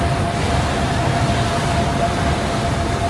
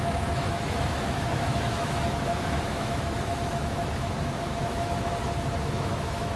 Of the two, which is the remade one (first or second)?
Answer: second